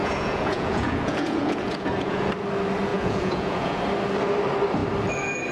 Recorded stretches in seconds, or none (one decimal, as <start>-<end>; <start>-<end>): 2.3-2.9; 3.8-5.5